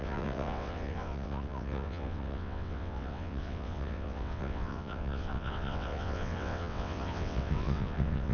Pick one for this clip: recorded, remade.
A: remade